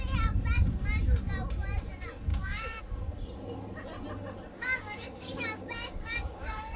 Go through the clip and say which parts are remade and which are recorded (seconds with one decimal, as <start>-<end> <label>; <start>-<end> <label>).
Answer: 0.0-2.3 recorded; 2.3-2.8 remade; 2.8-4.5 recorded; 4.5-6.8 remade